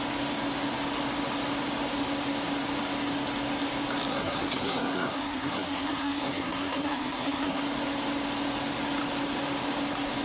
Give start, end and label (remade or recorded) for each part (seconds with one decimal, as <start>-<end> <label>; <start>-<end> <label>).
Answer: 0.0-4.1 recorded; 4.1-7.6 remade; 7.6-10.2 recorded